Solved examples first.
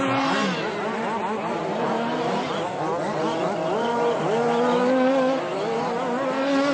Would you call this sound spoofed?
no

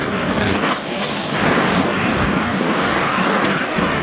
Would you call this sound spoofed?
yes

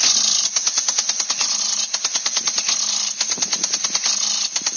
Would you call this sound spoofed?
no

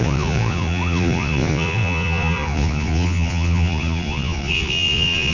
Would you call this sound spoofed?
yes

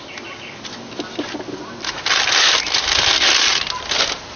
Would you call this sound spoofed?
no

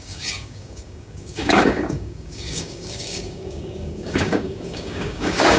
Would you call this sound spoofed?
yes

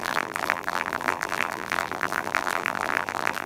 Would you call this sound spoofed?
yes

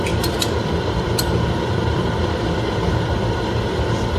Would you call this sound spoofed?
yes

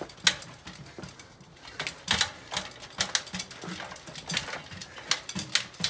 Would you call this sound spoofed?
no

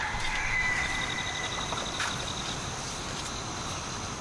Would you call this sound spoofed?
no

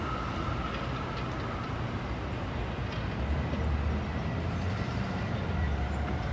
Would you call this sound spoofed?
no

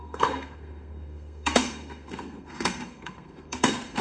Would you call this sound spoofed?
yes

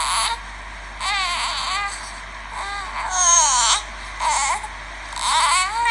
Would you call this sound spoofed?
no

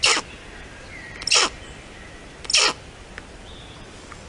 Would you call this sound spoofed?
no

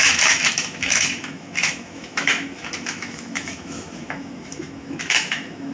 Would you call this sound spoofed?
yes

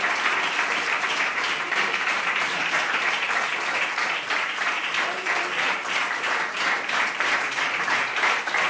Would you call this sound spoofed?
yes